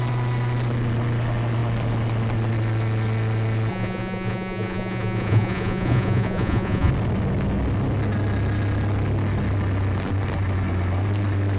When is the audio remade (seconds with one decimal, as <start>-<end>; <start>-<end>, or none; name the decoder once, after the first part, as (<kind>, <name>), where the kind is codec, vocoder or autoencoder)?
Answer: 3.7-6.9 (vocoder, Vocos)